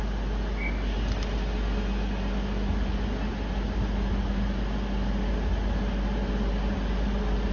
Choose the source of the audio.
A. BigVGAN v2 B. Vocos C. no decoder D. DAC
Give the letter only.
C